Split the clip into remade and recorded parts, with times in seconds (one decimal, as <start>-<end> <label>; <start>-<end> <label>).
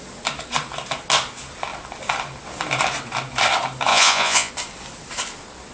0.0-3.9 recorded; 3.9-4.5 remade; 4.5-5.7 recorded